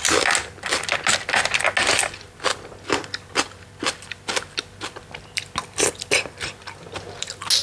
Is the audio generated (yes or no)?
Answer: no